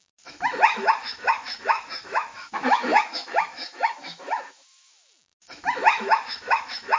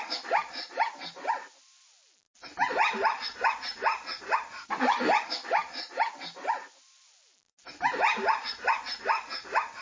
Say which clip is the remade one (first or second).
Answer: first